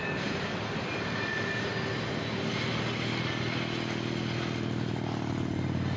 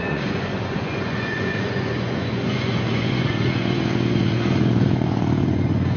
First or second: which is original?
first